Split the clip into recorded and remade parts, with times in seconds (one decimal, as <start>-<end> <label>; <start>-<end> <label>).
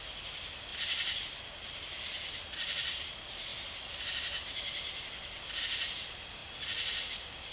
0.0-7.5 recorded